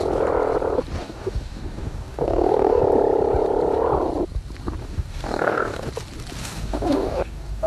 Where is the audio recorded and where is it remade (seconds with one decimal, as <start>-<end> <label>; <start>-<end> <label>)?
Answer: 0.0-1.0 recorded; 1.0-2.8 remade; 2.8-4.8 recorded; 4.8-5.9 remade; 5.9-6.4 recorded; 6.4-7.7 remade